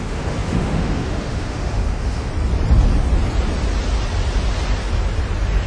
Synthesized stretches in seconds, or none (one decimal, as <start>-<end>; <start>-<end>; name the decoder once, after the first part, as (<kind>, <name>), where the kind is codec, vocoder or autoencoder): 0.0-2.3 (autoencoder, DAC-VAE)

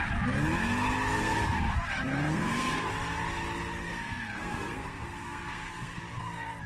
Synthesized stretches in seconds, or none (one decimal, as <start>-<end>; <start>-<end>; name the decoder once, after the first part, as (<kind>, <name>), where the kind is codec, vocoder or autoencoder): 1.2-1.7 (codec, SNAC); 2.1-2.9; 3.8-6.0

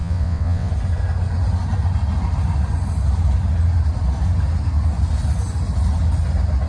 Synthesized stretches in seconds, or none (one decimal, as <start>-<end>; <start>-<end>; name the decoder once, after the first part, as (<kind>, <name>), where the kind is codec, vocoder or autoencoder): 0.0-0.7 (vocoder, WaveNeXt)